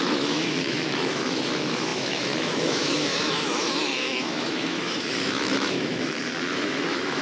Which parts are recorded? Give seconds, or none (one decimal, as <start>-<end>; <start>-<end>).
none